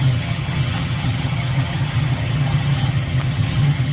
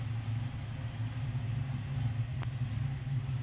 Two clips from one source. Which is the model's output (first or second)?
first